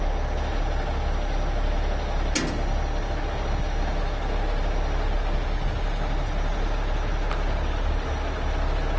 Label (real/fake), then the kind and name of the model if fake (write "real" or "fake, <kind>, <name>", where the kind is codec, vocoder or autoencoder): real